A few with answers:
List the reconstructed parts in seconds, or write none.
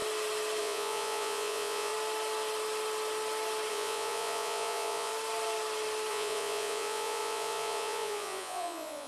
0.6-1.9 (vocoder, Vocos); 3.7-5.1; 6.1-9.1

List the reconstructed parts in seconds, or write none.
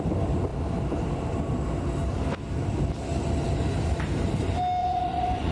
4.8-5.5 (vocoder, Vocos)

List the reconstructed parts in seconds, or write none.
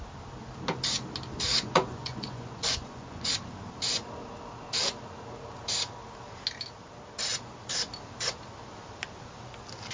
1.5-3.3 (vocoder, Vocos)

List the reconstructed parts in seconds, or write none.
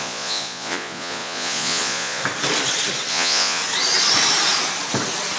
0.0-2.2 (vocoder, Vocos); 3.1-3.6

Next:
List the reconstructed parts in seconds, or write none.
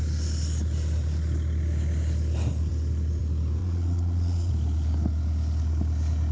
3.6-4.5 (vocoder, Vocos)